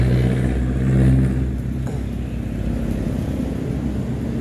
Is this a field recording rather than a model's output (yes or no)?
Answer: yes